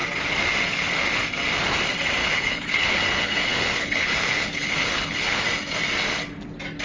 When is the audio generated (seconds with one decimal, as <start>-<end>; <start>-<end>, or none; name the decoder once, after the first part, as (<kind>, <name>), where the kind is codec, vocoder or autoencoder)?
2.2-5.4 (codec, HILCodec)